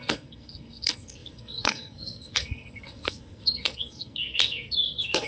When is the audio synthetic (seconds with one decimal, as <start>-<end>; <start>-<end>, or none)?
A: 0.0-5.3